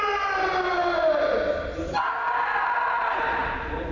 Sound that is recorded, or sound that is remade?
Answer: recorded